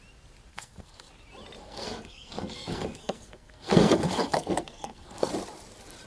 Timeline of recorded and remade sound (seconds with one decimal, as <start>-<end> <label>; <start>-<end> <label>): 0.0-0.5 recorded; 0.5-1.1 remade; 1.1-1.6 recorded; 1.6-5.3 remade; 5.3-6.1 recorded